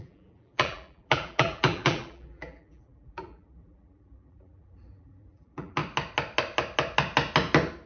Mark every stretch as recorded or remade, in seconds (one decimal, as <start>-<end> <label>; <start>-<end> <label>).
0.0-5.8 remade; 5.8-7.9 recorded